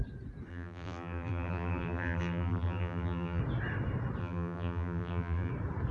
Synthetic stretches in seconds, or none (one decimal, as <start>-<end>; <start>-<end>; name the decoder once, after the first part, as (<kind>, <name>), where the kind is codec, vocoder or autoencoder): 0.5-3.4 (vocoder, BigVGAN v2); 4.2-5.5